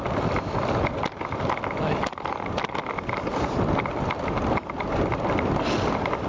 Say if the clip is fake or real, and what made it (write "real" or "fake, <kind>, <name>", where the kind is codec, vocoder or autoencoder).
real